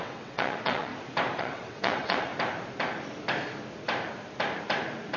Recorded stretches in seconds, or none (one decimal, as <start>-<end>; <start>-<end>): 0.9-1.4; 2.3-5.2